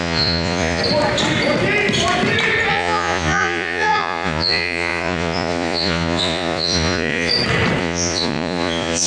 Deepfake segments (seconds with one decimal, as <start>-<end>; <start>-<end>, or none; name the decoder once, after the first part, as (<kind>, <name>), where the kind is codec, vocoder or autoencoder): 0.0-0.8 (vocoder, Vocos); 2.7-7.3; 7.8-9.1